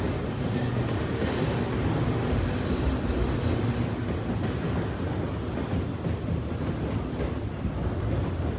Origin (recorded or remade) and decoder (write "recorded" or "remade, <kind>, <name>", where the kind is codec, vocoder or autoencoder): recorded